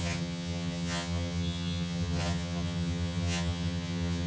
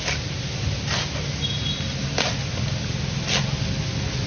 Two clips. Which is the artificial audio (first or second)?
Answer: first